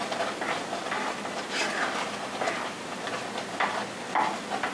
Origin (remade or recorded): recorded